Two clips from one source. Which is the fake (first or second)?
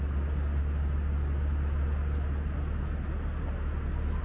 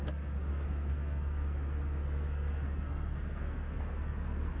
second